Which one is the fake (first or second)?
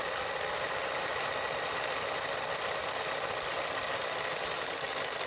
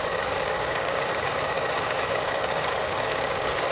second